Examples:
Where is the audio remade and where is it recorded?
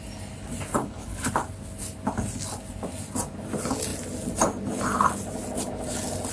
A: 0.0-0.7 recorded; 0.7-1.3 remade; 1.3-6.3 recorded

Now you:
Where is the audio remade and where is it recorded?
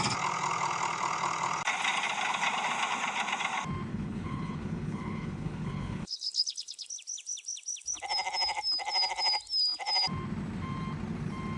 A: 0.0-3.9 recorded; 3.9-6.9 remade; 6.9-11.6 recorded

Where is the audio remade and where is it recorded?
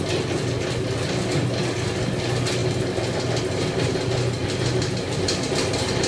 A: 0.0-6.1 recorded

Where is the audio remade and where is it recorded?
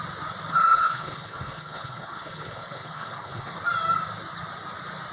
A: 0.0-0.5 recorded; 0.5-3.6 remade; 3.6-5.1 recorded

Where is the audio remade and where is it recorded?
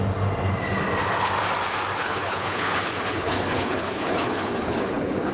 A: 0.0-2.0 recorded; 2.0-5.3 remade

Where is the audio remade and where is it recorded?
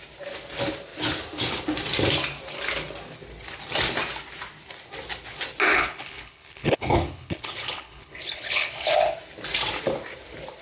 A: 0.0-5.7 recorded; 5.7-8.9 remade; 8.9-10.6 recorded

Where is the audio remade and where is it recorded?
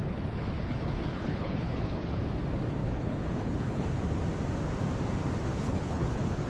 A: 0.0-2.2 remade; 2.2-2.8 recorded; 2.8-4.0 remade; 4.0-5.5 recorded; 5.5-6.5 remade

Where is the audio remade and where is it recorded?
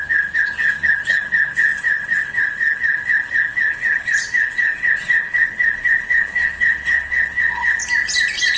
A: 0.0-7.8 remade; 7.8-8.6 recorded